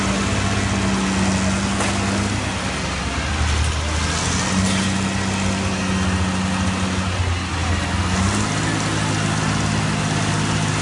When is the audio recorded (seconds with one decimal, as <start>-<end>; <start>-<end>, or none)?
0.0-10.8